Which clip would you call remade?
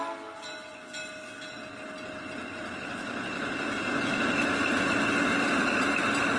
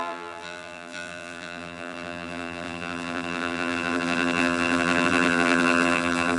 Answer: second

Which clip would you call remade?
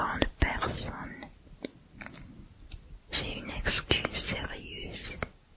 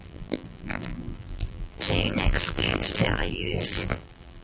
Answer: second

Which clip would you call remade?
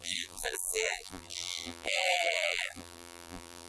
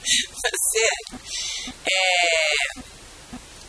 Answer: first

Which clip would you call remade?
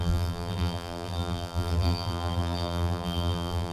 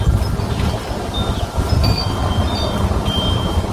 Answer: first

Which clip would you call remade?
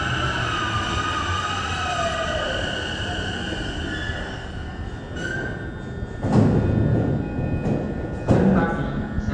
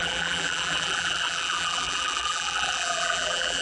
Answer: second